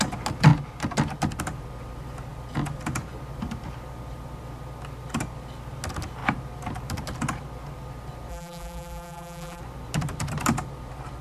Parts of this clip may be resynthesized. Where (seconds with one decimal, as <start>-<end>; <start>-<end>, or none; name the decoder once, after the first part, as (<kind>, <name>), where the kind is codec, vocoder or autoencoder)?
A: 8.3-9.6 (vocoder, BigVGAN v2)